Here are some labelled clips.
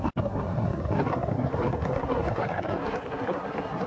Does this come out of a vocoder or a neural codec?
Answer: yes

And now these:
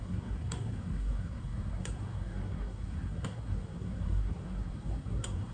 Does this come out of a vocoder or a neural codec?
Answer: yes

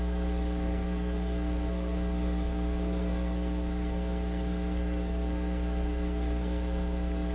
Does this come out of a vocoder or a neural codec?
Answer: yes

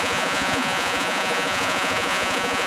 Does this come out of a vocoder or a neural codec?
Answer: yes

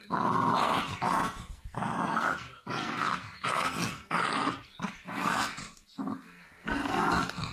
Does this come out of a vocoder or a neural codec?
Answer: yes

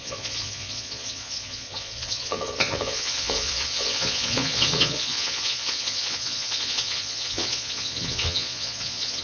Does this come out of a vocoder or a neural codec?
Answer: yes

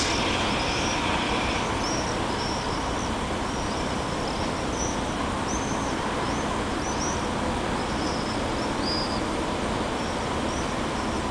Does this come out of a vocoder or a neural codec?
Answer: no